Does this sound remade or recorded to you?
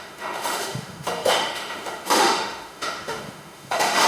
remade